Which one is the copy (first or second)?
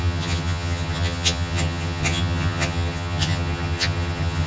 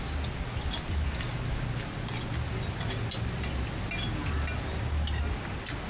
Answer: first